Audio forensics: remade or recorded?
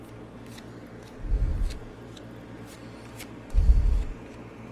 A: recorded